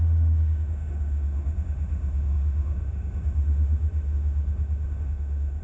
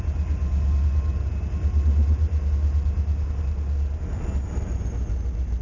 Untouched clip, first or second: second